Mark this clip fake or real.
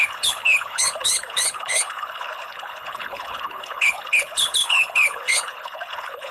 fake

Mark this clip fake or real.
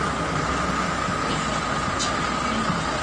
real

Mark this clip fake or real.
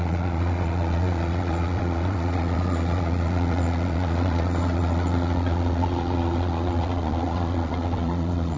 fake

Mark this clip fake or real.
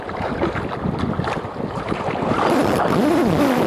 real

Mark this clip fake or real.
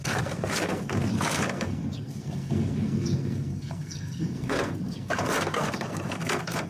fake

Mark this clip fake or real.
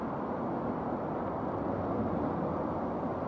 real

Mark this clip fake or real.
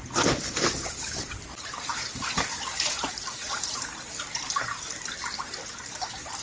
real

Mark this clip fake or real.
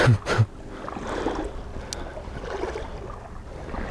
real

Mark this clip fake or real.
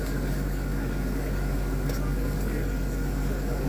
fake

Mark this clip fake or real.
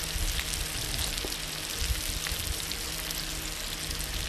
real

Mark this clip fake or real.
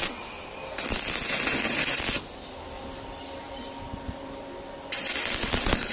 real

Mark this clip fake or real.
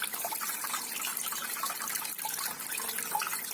real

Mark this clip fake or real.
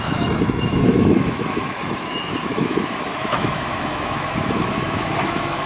fake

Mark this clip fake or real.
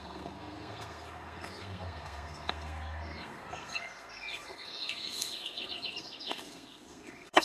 fake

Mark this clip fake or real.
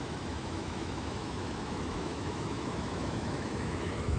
fake